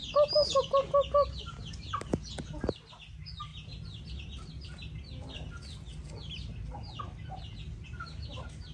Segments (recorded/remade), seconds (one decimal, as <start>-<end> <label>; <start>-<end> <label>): 0.0-3.5 recorded; 3.5-4.5 remade; 4.5-8.7 recorded